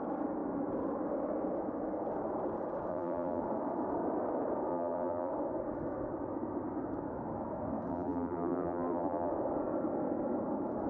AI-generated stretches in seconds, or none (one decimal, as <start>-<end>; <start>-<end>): 2.9-3.4; 4.7-5.3; 7.9-9.3